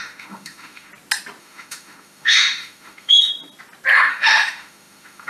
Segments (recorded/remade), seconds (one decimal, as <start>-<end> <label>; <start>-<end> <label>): 0.0-0.9 remade; 0.9-1.4 recorded; 1.4-3.3 remade; 3.3-4.1 recorded; 4.1-5.3 remade